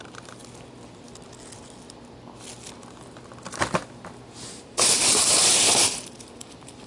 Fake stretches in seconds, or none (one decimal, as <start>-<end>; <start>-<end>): 0.0-0.4; 4.5-6.9